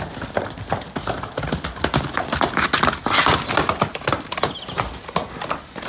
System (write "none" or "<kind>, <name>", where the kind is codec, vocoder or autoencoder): none